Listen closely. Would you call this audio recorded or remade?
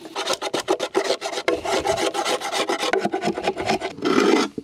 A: recorded